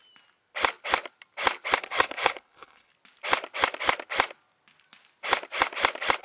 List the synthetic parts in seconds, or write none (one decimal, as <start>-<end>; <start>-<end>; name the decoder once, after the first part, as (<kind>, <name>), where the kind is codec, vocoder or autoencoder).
1.8-2.9 (codec, HILCodec)